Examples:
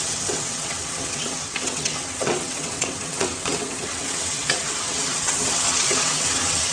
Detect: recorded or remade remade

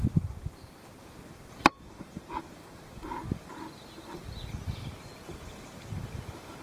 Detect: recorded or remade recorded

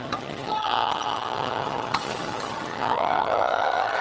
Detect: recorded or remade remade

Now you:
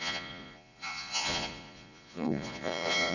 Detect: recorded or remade remade